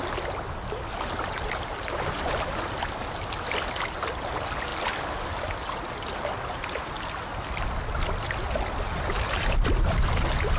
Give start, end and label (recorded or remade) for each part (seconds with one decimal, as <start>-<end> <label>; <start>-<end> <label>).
0.0-10.6 recorded